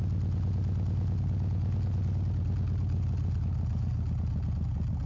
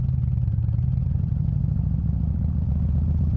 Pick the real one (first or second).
first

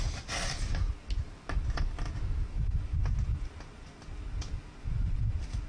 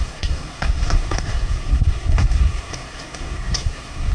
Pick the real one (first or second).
first